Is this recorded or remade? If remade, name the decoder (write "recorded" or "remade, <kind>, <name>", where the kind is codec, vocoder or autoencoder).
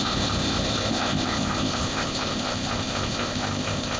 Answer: remade, codec, ZipCodec